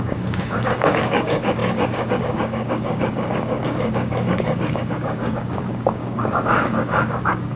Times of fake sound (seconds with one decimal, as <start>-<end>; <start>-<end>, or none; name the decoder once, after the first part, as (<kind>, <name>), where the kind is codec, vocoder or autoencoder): 0.0-7.6 (codec, DAC)

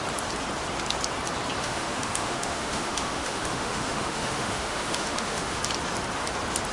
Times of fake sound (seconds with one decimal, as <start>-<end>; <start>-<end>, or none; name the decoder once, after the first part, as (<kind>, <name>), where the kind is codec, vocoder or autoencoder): 1.6-5.6 (autoencoder, DAC-VAE)

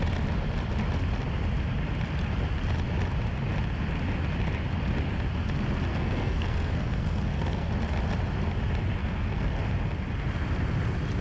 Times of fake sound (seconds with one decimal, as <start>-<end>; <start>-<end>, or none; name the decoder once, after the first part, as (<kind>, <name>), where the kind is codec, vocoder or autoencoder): 5.9-7.7 (codec, SNAC); 9.0-9.6

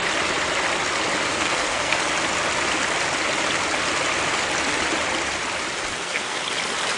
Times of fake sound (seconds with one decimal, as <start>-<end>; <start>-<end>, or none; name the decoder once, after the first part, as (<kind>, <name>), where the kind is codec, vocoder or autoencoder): 1.3-2.0 (codec, SNAC); 5.9-6.4

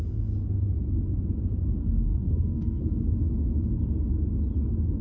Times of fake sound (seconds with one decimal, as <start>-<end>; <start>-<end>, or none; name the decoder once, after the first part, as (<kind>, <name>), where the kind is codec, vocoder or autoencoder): 1.8-2.8 (codec, SNAC)

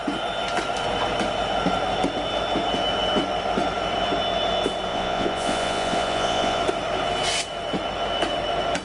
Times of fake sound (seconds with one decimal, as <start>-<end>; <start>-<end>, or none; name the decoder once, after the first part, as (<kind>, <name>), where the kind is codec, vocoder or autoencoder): 4.9-6.6 (vocoder, Vocos)

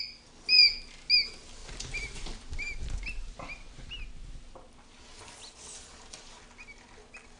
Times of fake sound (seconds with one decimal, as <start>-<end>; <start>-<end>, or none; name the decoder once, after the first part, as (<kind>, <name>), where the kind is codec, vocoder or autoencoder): none